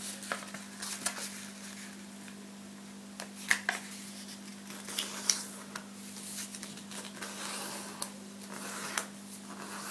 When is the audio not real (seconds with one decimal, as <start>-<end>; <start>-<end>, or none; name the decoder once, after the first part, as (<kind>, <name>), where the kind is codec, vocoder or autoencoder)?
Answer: none